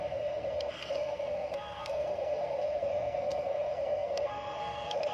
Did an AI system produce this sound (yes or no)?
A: yes